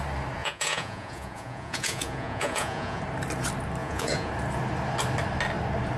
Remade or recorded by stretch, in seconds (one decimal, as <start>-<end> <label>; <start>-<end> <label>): 0.0-0.4 recorded; 0.4-3.0 remade; 3.0-3.8 recorded; 3.8-4.3 remade; 4.3-6.0 recorded